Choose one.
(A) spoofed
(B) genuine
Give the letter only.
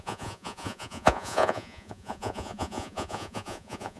A